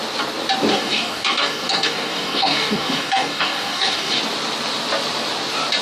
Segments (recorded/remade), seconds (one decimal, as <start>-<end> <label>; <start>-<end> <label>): 0.0-0.7 recorded; 0.7-4.2 remade; 4.2-5.8 recorded